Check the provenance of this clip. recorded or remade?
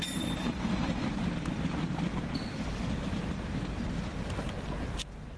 recorded